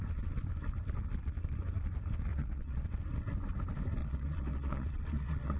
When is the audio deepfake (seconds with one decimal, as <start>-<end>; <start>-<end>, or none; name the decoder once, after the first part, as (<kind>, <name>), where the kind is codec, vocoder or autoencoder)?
2.3-2.9 (vocoder, Vocos); 4.0-5.6